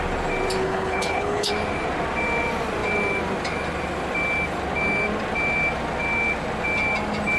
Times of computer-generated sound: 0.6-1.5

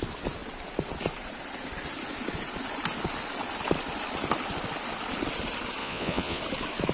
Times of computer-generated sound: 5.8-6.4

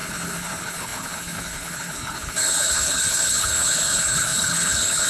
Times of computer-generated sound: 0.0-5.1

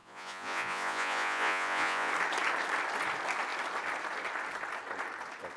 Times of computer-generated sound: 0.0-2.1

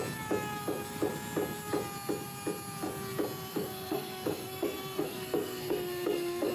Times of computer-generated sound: 3.5-6.5